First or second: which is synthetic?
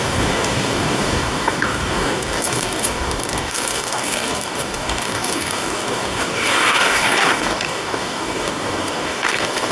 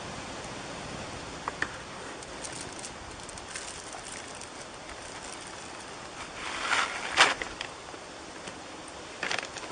first